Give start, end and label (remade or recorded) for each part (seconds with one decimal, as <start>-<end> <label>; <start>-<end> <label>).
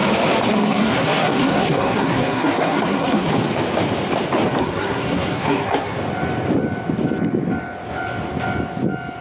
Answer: 0.0-0.5 recorded; 0.5-3.3 remade; 3.3-4.6 recorded; 4.6-6.0 remade; 6.0-9.2 recorded